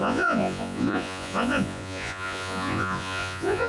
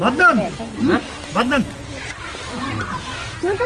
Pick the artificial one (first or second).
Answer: first